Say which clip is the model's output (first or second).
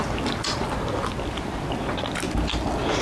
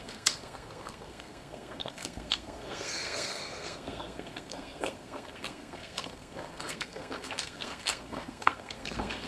second